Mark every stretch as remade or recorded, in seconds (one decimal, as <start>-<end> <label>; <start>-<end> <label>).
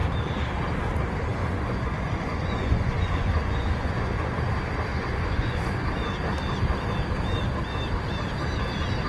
0.0-1.4 recorded; 1.4-4.4 remade; 4.4-4.9 recorded; 4.9-5.9 remade; 5.9-9.1 recorded